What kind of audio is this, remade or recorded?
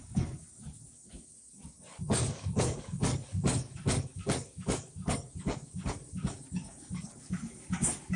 remade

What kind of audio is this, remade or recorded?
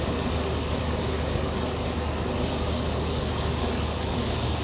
remade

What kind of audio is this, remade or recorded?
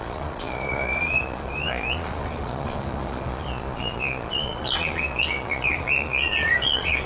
remade